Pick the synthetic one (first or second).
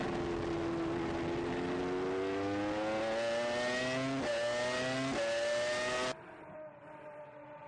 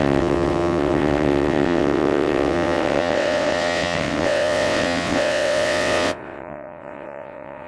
second